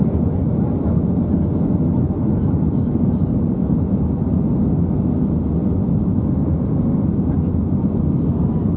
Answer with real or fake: real